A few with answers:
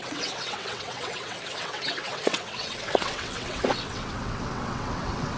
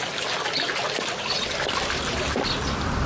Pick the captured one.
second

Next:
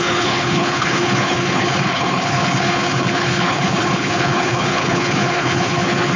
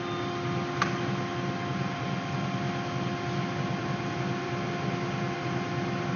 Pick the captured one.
second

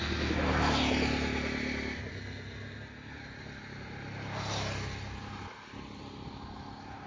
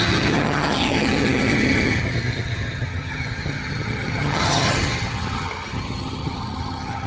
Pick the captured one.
first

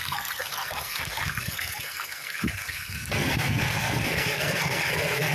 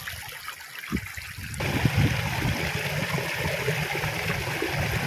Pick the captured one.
second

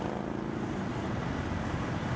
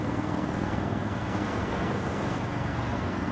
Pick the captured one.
first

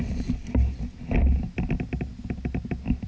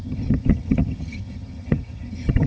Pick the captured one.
first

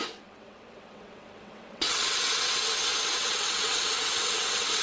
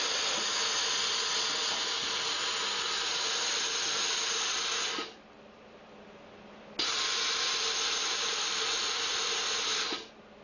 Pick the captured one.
second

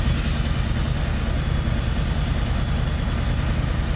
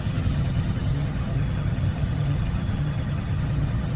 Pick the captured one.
first